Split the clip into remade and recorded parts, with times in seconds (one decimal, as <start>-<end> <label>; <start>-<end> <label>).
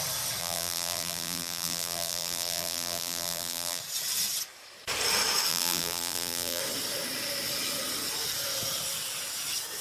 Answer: 0.0-0.4 recorded; 0.4-3.8 remade; 3.8-5.5 recorded; 5.5-6.6 remade; 6.6-9.8 recorded